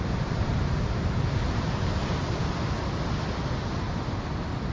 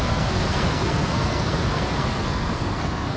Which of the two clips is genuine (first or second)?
first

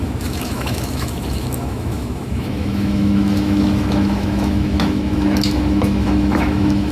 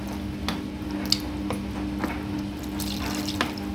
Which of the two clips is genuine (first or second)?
second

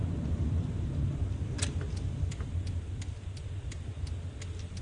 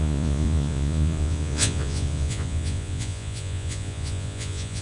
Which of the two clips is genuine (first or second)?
first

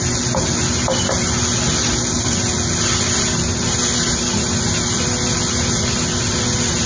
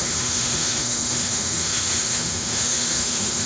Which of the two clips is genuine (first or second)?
first